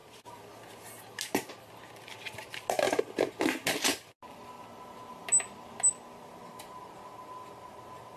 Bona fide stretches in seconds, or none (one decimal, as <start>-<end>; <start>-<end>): 0.0-8.2

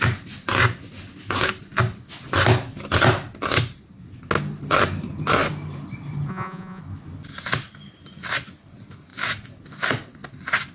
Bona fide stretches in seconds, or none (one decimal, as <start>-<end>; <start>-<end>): 0.0-6.3; 6.8-10.7

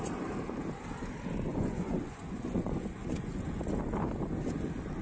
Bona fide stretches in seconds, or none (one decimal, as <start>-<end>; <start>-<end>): 0.0-1.5; 3.6-5.0

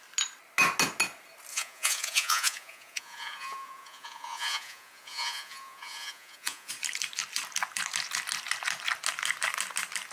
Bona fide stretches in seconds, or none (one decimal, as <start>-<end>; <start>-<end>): 0.0-1.5; 6.7-10.1

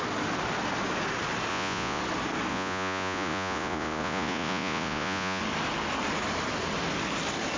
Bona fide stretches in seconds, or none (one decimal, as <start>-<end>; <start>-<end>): 0.0-1.5; 2.0-2.5; 5.4-7.6

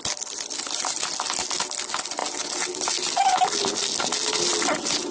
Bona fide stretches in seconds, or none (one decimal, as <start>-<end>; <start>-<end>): 0.0-5.1